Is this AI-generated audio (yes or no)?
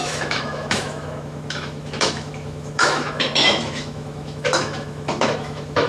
yes